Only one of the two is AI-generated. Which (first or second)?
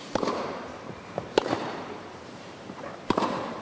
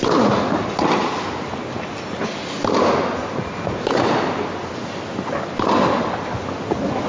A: first